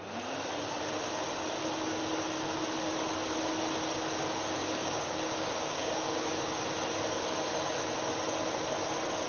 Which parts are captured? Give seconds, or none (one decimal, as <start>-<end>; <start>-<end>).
0.0-4.6; 6.6-9.3